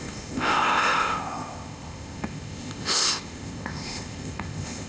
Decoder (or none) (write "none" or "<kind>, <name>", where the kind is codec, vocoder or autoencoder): codec, ZipCodec